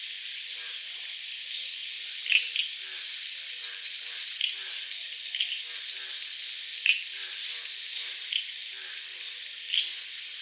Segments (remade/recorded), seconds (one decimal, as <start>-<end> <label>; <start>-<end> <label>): 0.0-10.4 recorded